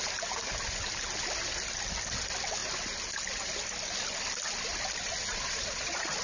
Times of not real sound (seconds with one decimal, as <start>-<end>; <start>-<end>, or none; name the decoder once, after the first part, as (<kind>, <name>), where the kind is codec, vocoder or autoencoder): 5.3-6.2 (vocoder, Vocos)